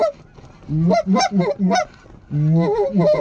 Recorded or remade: recorded